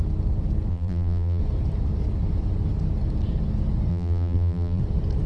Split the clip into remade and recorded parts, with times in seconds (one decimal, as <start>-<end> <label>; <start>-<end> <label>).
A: 0.0-0.7 recorded; 0.7-1.4 remade; 1.4-3.9 recorded; 3.9-4.8 remade; 4.8-5.3 recorded